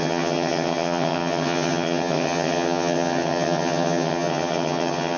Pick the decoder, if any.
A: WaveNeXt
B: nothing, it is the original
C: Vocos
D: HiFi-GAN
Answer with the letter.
D